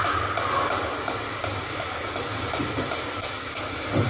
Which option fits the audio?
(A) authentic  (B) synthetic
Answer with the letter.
A